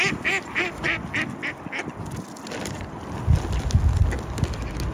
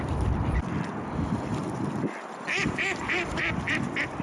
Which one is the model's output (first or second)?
second